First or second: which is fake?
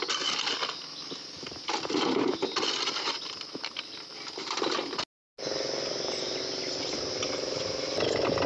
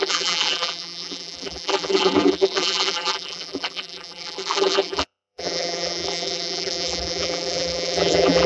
second